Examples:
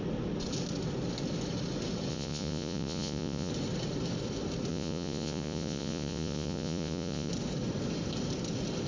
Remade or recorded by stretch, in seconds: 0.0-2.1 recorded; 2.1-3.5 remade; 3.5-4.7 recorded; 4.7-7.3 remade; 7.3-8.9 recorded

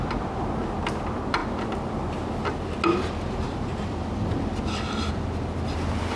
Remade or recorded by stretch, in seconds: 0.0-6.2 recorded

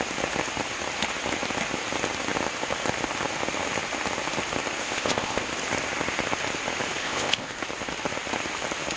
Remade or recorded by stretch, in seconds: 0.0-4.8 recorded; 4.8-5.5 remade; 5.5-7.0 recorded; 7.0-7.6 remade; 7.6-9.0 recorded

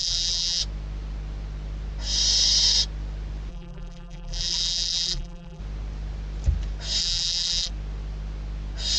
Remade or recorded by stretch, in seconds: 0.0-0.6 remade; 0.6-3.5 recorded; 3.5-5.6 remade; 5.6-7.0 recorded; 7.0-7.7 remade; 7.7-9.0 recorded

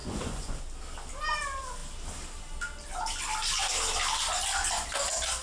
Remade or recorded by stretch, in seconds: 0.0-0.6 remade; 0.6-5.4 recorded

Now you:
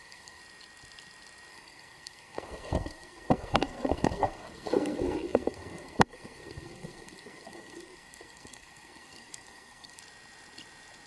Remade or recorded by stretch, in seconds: 0.0-0.4 remade; 0.4-1.5 recorded; 1.5-10.0 remade; 10.0-11.1 recorded

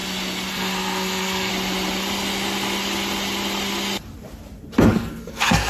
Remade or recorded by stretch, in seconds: 0.0-0.5 recorded; 0.5-1.5 remade; 1.5-4.9 recorded; 4.9-5.7 remade

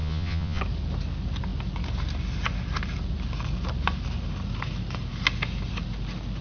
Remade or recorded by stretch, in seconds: 0.0-0.6 remade; 0.6-6.4 recorded